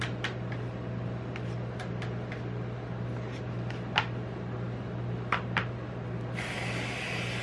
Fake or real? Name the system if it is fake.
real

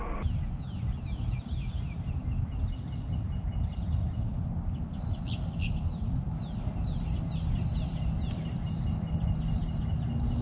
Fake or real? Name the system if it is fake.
real